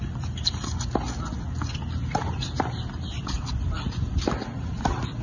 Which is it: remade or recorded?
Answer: recorded